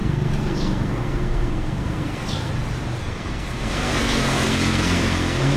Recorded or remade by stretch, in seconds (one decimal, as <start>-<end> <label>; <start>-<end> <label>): 0.0-2.5 remade; 2.5-3.0 recorded; 3.0-5.6 remade